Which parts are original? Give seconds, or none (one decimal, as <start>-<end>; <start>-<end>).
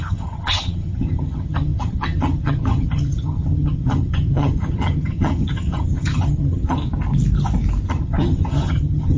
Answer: 6.8-7.9